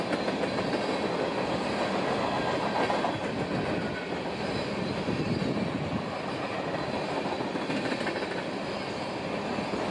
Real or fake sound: real